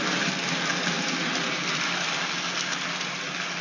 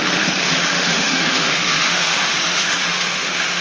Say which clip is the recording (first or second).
first